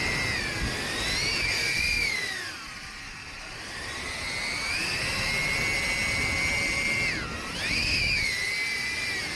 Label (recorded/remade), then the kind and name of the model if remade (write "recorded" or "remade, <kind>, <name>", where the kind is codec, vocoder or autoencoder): recorded